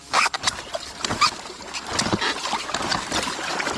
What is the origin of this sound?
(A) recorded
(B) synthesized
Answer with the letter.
A